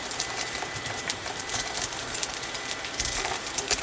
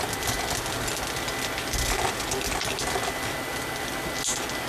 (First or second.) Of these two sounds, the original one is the second